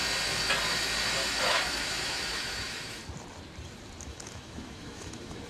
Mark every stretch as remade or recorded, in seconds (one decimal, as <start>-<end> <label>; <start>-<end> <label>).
0.0-1.4 recorded; 1.4-3.0 remade; 3.0-4.0 recorded; 4.0-5.5 remade